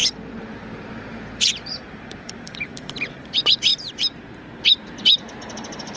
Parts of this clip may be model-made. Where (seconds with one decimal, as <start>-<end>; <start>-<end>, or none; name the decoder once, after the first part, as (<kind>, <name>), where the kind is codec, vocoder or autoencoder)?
0.0-6.0 (vocoder, BigVGAN v2)